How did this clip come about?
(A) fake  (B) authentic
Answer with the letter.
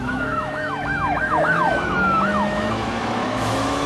A